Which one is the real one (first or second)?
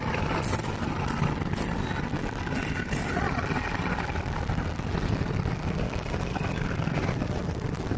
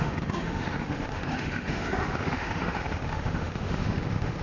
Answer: first